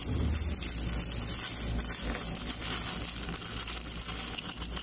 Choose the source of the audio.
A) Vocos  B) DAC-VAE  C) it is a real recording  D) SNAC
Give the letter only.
C